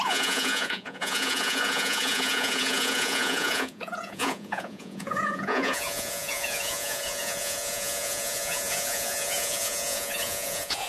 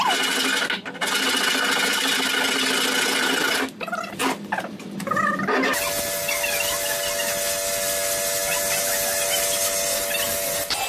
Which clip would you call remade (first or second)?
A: first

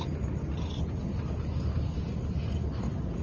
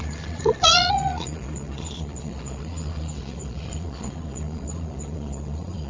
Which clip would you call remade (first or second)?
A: second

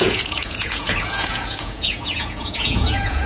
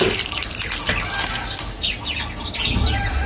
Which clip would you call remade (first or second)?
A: first